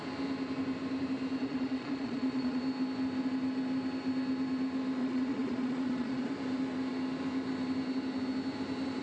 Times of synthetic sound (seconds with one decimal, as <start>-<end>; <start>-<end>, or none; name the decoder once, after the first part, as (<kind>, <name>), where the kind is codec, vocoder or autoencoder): 1.4-2.6 (vocoder, Vocos); 5.0-6.3